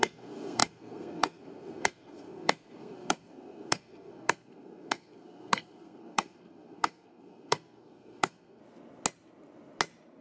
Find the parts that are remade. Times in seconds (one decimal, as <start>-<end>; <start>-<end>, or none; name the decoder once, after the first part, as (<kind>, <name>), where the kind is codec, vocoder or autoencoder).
0.0-8.6 (codec, SNAC)